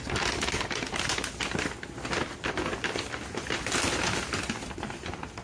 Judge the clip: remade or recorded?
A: recorded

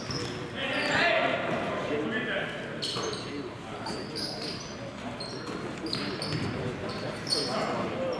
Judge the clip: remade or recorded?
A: recorded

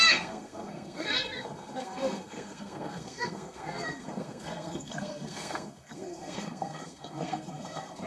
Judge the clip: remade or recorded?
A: remade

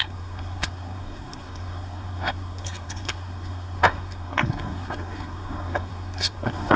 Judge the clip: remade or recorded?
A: remade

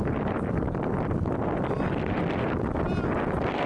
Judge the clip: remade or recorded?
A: recorded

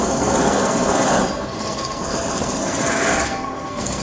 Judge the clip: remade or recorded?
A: remade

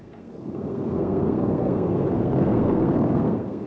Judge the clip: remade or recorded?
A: remade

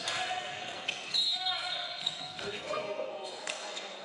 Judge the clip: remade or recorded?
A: remade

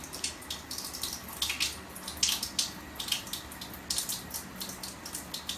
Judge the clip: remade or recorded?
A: recorded